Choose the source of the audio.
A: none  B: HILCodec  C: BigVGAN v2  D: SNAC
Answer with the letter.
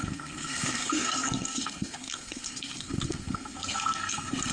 D